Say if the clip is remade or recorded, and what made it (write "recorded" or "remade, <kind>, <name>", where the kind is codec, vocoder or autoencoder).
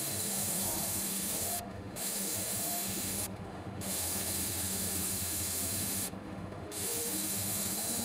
remade, autoencoder, DAC-VAE